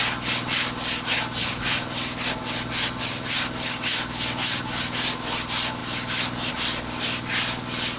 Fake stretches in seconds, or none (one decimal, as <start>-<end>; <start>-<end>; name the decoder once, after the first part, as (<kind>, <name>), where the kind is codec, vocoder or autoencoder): none